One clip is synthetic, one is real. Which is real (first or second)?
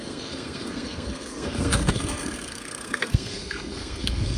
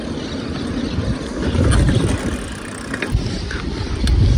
second